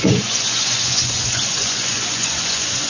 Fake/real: fake